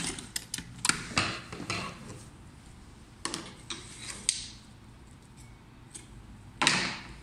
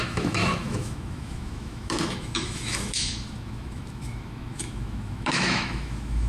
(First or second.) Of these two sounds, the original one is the first